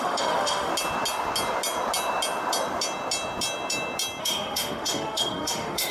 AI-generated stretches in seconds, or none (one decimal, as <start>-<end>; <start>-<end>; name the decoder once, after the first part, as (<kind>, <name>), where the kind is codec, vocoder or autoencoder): 0.0-0.7 (autoencoder, DAC-VAE); 4.2-5.9